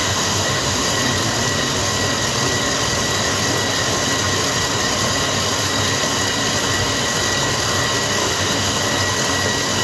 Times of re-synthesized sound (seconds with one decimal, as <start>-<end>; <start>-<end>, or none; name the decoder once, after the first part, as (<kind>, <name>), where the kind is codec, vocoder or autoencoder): 0.0-0.9 (autoencoder, DAC-VAE); 8.2-8.8